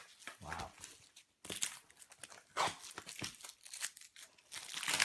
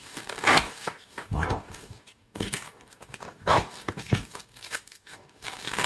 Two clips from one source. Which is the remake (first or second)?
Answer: second